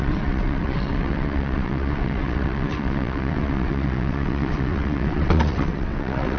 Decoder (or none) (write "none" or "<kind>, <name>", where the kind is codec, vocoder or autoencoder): vocoder, WaveNeXt